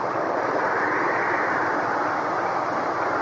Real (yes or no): yes